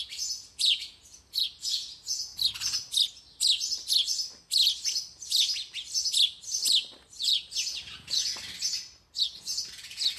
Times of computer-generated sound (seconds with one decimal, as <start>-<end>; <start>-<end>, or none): 0.0-2.3; 7.2-8.3; 9.2-10.2